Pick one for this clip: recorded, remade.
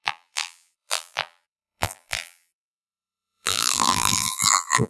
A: remade